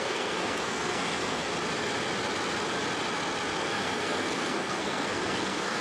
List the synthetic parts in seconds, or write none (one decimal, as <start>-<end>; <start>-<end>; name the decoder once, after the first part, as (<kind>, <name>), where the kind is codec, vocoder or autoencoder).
0.0-1.5 (codec, SNAC); 3.6-5.8